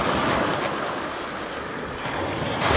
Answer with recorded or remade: recorded